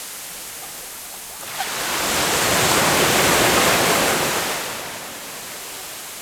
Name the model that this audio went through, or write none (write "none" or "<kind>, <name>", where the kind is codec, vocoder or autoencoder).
none